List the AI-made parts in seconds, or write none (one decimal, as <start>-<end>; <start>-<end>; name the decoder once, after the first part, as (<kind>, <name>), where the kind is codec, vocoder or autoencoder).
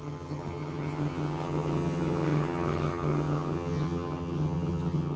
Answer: 0.0-5.2 (vocoder, HiFi-GAN)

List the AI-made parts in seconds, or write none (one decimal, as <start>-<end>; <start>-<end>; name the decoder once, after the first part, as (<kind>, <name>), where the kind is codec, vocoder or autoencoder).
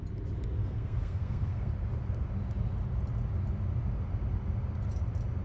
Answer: 0.6-1.7 (codec, SNAC)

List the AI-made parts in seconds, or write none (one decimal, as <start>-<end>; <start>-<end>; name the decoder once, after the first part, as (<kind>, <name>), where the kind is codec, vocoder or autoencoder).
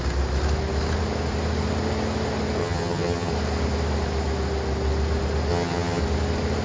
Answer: 2.6-3.3 (vocoder, HiFi-GAN); 5.5-6.0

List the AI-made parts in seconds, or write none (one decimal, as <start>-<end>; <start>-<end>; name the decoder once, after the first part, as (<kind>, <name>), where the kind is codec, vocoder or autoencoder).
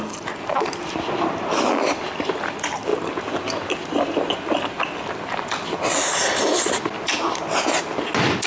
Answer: none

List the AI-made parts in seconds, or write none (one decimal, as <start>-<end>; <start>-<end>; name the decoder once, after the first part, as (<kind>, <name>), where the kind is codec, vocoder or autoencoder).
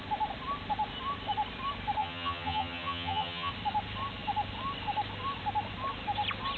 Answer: 2.0-3.5 (vocoder, HiFi-GAN)